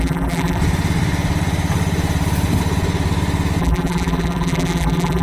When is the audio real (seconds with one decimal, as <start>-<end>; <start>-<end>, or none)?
0.6-3.6